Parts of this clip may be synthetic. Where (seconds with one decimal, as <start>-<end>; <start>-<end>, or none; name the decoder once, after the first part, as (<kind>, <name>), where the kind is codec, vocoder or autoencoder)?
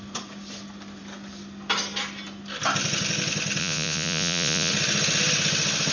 3.6-4.7 (vocoder, Vocos)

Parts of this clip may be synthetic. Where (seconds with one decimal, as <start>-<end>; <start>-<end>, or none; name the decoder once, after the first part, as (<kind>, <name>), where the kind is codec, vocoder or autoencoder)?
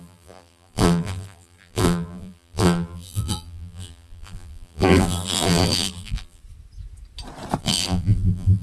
0.0-6.4 (vocoder, BigVGAN v2); 7.6-8.6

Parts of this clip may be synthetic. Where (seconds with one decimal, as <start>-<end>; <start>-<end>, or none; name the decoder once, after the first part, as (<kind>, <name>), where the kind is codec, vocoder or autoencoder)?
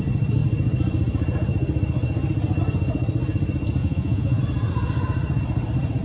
3.8-4.4 (vocoder, Vocos)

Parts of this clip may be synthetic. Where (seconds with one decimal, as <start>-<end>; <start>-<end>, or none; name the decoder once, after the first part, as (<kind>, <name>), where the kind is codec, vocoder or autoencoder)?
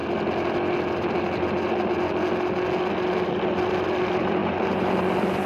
4.4-4.9 (vocoder, BigVGAN v2)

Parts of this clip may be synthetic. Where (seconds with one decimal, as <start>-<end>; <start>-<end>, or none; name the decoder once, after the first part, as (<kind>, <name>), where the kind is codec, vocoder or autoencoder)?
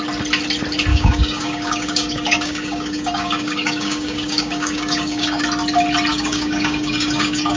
0.9-5.4 (codec, DAC); 6.1-7.6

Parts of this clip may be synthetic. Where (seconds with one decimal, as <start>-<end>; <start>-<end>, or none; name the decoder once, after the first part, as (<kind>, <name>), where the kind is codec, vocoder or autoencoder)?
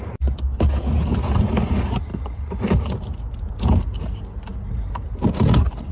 none